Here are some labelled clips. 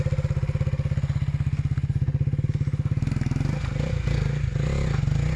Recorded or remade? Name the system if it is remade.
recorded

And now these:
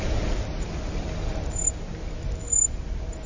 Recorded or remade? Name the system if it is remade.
recorded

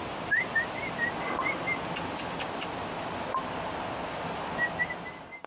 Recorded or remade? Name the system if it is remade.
recorded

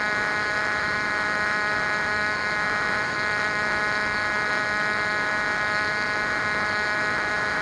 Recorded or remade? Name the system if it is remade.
remade, autoencoder, DAC-VAE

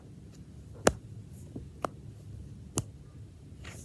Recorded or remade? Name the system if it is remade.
recorded